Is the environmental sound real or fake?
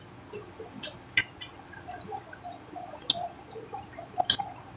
real